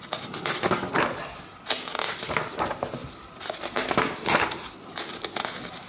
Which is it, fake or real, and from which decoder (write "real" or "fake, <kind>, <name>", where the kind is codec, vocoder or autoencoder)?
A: real